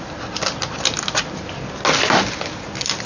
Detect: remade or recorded recorded